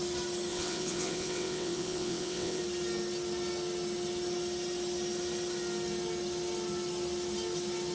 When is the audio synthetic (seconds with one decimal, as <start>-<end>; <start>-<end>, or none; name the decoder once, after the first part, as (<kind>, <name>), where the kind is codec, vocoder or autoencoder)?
0.5-2.6 (vocoder, WaveNeXt)